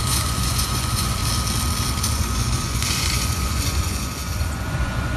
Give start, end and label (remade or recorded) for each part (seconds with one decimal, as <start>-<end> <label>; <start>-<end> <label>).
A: 0.0-1.2 remade; 1.2-2.1 recorded; 2.1-5.2 remade